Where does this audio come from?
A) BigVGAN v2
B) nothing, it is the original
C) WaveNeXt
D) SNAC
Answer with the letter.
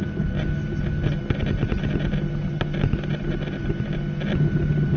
B